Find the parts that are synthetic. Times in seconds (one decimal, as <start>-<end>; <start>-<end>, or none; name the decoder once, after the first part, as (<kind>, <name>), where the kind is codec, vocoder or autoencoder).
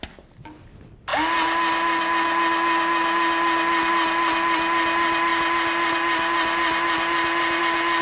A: none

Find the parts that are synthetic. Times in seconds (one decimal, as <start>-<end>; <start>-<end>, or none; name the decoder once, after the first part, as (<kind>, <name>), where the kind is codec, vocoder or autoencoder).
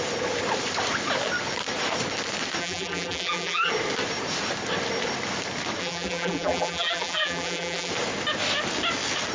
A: 2.6-3.7 (vocoder, BigVGAN v2); 5.8-7.9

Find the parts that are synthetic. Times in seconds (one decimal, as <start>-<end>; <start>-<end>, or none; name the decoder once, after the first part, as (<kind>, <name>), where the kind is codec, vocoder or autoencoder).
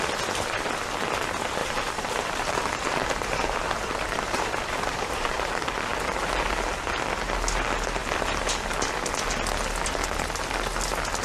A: 1.6-5.5 (vocoder, BigVGAN v2)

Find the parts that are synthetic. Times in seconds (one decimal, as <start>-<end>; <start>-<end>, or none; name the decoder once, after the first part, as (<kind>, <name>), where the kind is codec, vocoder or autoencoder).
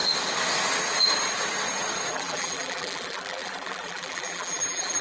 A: 2.1-5.0 (vocoder, BigVGAN v2)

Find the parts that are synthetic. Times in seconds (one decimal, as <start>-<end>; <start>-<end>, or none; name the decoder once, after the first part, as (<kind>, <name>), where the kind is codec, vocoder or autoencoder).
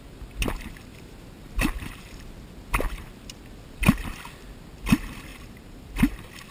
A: 0.9-2.3 (vocoder, BigVGAN v2); 5.3-5.9